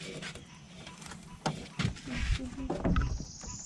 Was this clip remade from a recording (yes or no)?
no